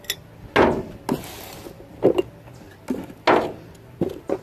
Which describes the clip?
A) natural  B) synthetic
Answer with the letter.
A